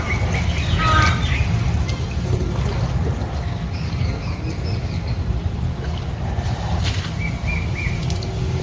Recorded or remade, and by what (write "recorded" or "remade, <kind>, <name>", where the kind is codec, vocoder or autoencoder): recorded